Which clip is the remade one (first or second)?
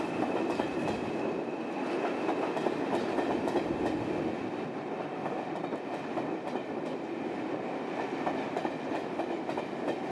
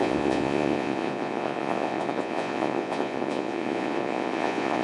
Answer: second